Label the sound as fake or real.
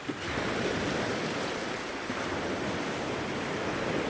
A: real